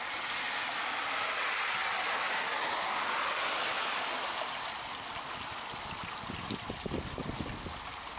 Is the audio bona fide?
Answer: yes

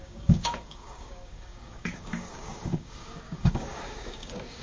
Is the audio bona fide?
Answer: no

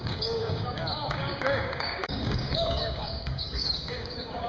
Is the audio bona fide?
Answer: no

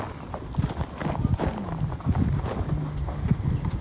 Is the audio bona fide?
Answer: yes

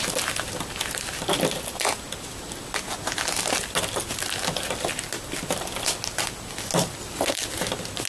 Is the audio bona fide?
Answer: yes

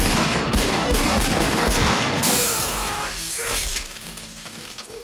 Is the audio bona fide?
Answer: no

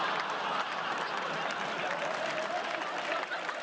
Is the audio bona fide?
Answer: yes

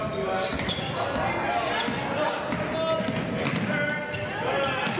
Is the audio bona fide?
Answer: yes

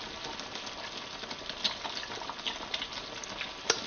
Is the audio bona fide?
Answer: yes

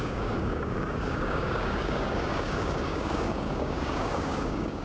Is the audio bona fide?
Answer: no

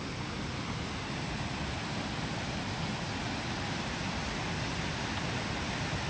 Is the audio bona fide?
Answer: yes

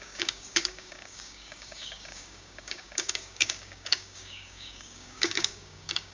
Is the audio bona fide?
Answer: no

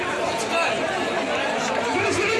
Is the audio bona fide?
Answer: yes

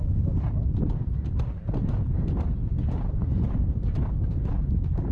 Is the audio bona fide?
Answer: yes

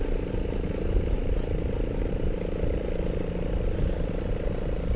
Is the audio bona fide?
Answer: yes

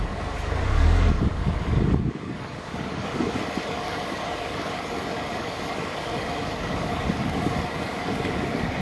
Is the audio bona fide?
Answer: no